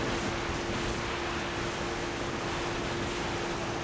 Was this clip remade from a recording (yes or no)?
no